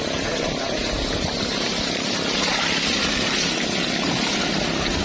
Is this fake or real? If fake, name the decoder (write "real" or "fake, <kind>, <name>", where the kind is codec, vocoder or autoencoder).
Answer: real